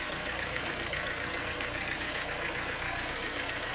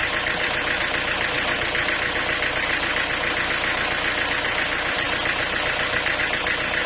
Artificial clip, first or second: first